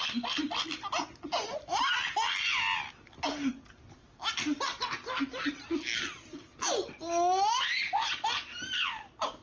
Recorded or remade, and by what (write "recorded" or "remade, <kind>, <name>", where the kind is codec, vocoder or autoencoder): recorded